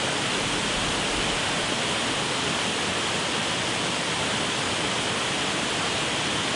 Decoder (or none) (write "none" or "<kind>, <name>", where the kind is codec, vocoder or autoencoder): none